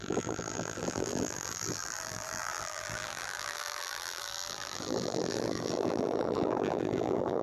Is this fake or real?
fake